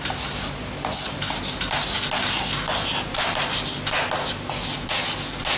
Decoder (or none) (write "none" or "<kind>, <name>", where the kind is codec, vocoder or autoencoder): none